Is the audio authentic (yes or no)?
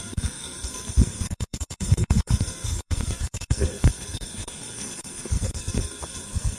no